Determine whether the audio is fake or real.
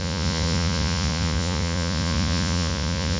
fake